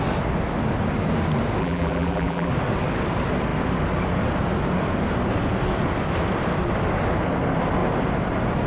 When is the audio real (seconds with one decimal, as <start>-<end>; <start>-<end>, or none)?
0.0-1.6; 2.5-8.7